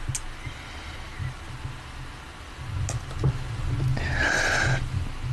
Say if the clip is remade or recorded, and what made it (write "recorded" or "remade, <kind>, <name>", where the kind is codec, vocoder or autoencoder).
recorded